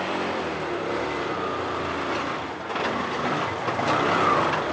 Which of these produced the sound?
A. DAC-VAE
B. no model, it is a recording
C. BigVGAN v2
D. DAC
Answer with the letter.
B